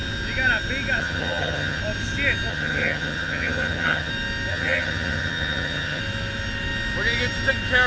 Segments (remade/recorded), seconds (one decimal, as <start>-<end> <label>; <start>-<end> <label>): 0.0-1.0 recorded; 1.0-1.8 remade; 1.8-2.5 recorded; 2.5-4.1 remade; 4.1-4.5 recorded; 4.5-6.0 remade; 6.0-7.9 recorded